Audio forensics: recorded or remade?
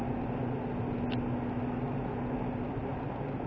recorded